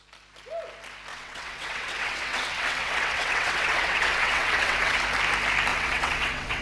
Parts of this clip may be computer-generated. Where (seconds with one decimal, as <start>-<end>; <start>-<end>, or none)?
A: 1.1-5.0; 5.7-6.6